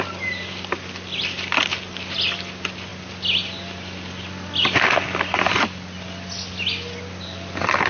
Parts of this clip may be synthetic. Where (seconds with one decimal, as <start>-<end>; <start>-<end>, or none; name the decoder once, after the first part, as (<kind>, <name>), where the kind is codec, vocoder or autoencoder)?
none